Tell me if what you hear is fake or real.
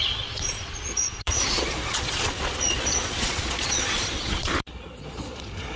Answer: fake